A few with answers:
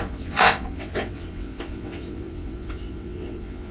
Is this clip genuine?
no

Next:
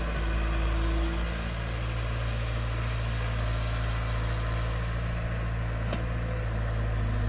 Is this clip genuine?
yes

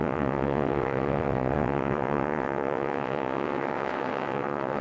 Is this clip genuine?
no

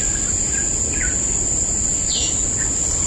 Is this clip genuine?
yes